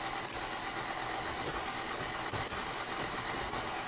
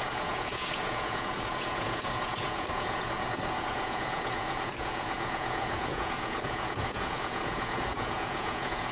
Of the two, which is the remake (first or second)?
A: second